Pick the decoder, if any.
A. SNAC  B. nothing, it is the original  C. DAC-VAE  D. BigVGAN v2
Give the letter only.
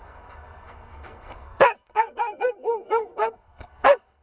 A